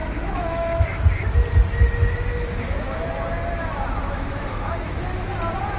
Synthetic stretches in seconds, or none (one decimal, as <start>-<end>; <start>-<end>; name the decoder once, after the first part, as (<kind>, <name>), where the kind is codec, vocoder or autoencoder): 0.0-1.1 (autoencoder, DAC-VAE); 2.0-3.1; 4.0-5.0